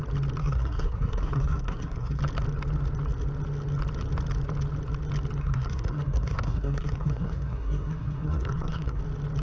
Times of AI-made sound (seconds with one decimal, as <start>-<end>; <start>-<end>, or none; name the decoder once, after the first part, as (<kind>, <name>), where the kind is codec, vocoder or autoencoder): 0.4-2.2 (codec, SNAC); 5.4-9.0